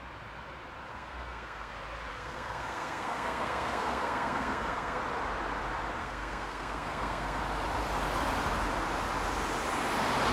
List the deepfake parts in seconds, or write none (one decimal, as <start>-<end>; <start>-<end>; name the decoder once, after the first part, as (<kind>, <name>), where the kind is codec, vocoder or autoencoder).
0.9-1.7 (codec, SNAC); 2.1-5.0; 6.0-7.4